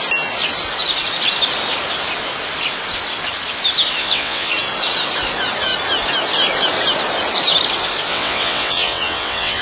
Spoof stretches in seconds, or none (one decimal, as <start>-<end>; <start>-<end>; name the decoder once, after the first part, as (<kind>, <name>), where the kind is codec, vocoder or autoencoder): 4.0-4.5 (vocoder, WaveNeXt); 8.1-9.6